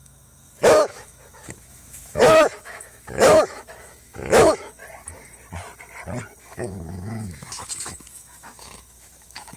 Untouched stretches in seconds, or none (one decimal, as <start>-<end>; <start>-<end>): 4.8-6.4